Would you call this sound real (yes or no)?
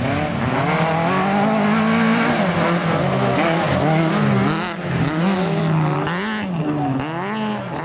yes